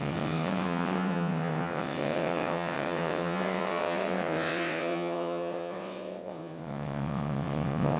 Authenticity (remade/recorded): remade